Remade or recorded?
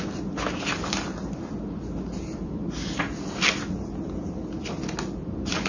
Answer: recorded